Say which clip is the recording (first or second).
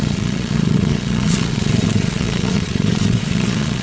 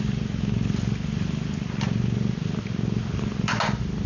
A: second